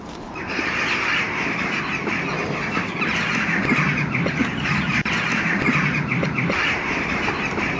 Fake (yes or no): no